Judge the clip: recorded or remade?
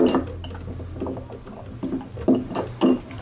recorded